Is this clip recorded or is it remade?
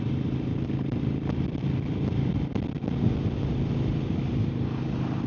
recorded